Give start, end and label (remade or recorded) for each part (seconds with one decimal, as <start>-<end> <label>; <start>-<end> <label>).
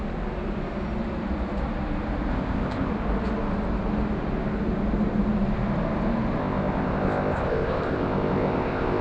0.0-2.3 recorded; 2.3-2.9 remade; 2.9-6.4 recorded; 6.4-9.0 remade